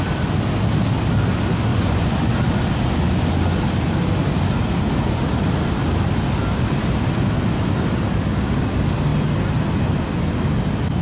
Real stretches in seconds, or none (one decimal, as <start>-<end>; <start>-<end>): 0.0-1.7; 2.3-11.0